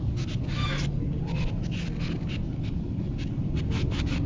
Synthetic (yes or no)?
no